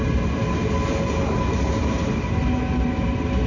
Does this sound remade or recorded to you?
recorded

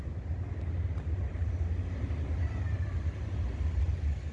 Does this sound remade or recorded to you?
recorded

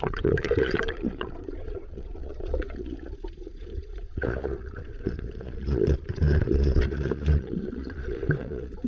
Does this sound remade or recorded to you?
remade